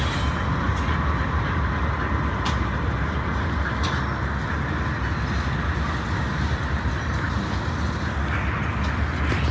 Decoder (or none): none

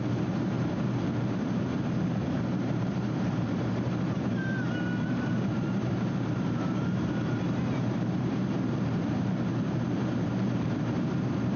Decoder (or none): vocoder, BigVGAN v2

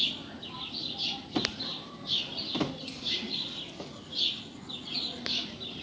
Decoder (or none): none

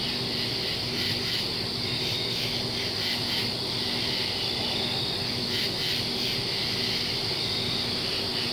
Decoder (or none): none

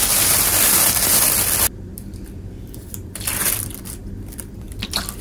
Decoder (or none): vocoder, BigVGAN v2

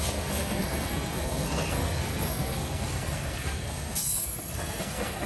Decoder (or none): codec, SNAC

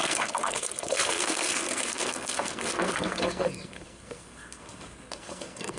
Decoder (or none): codec, SNAC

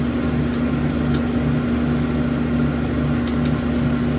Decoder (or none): none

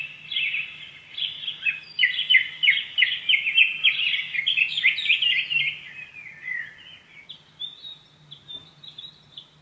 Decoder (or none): none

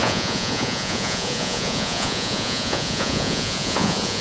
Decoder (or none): vocoder, Vocos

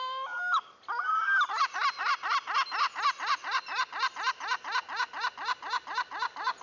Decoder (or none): none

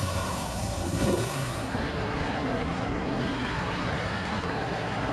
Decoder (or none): codec, SNAC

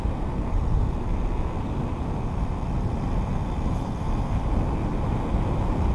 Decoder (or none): none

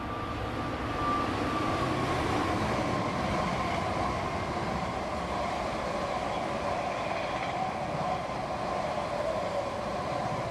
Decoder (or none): none